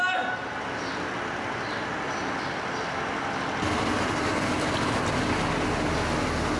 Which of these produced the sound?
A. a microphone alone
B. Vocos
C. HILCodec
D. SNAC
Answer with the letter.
A